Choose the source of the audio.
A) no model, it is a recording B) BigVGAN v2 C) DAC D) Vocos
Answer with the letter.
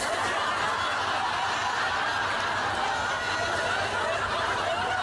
A